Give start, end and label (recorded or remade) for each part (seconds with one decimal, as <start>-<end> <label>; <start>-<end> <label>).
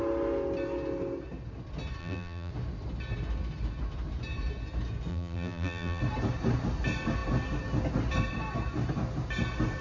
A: 0.0-2.0 recorded; 2.0-2.5 remade; 2.5-5.1 recorded; 5.1-6.0 remade; 6.0-9.8 recorded